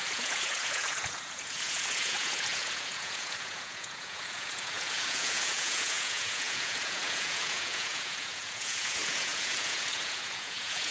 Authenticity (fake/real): fake